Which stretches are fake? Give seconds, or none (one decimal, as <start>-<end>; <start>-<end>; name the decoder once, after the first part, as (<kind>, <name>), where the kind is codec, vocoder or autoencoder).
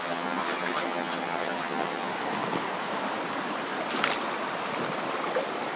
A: 0.0-2.1 (vocoder, HiFi-GAN)